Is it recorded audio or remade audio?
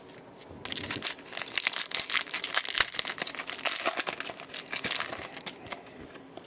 recorded